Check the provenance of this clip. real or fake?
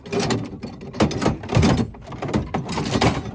real